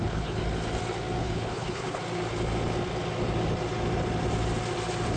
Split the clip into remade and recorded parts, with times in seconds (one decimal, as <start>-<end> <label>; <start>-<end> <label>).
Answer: 0.0-0.4 remade; 0.4-1.2 recorded; 1.2-2.0 remade; 2.0-5.2 recorded